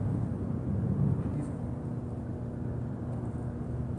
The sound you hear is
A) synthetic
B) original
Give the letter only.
B